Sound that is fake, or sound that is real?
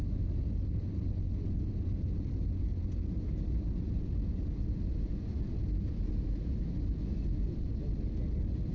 real